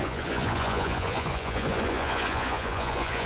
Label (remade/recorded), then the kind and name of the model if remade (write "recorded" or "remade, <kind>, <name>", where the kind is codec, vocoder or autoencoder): remade, vocoder, Vocos